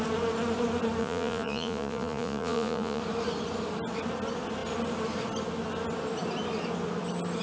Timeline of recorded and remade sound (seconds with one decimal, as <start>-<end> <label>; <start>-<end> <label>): 0.0-1.0 recorded; 1.0-3.0 remade; 3.0-7.4 recorded